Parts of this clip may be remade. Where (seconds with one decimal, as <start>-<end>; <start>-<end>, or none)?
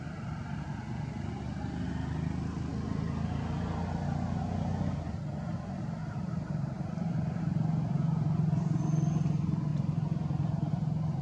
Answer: 6.0-7.4; 9.7-10.7